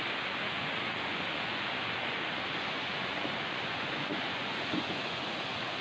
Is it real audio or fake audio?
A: fake